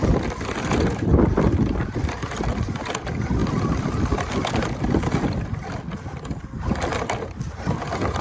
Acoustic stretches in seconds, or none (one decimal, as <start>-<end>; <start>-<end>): 0.0-8.2